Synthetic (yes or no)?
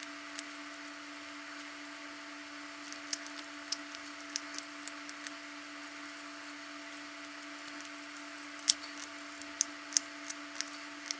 no